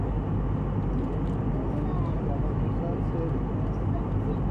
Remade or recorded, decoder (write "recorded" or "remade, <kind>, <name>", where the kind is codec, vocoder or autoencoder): recorded